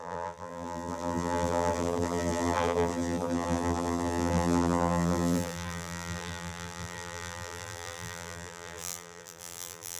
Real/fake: fake